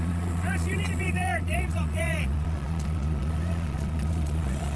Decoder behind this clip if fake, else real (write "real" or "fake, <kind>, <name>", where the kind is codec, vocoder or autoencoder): fake, vocoder, Vocos